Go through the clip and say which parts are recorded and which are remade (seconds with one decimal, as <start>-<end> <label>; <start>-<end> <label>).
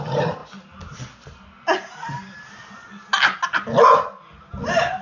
0.0-5.0 recorded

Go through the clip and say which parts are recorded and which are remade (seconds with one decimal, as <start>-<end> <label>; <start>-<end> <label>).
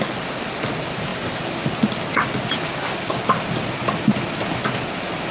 0.0-5.3 recorded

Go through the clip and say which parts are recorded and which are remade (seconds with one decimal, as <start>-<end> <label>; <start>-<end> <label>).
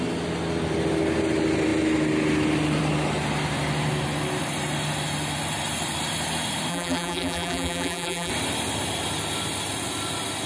0.0-6.7 recorded; 6.7-8.3 remade; 8.3-10.5 recorded